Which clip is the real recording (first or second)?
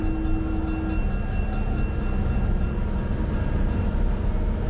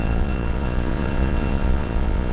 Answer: first